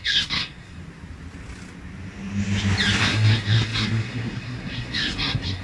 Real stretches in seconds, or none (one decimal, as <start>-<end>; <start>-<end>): 0.8-3.0